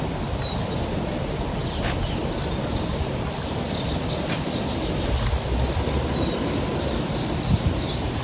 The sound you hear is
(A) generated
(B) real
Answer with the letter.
B